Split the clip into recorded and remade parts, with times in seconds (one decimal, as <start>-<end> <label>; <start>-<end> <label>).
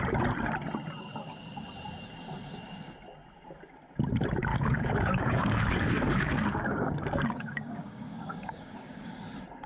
0.0-4.5 recorded; 4.5-9.1 remade; 9.1-9.7 recorded